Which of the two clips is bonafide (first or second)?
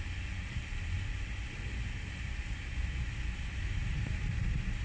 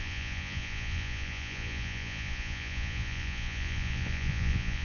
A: first